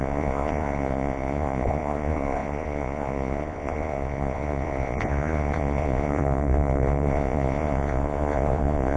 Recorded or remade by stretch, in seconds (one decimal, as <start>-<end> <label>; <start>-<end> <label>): 0.0-9.0 remade